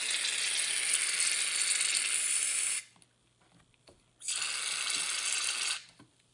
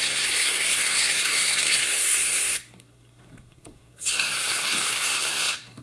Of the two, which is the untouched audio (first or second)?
first